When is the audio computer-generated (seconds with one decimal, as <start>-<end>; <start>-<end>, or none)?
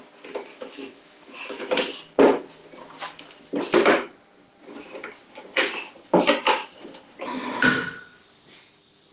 0.5-1.6